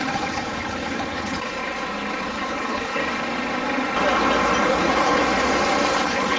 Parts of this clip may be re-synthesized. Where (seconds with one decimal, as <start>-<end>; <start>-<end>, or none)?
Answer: 0.0-1.6; 2.2-3.0; 4.6-5.2; 5.9-6.4